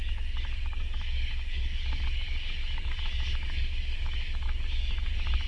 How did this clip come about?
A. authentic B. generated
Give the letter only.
B